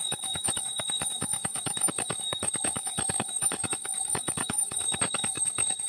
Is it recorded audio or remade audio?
remade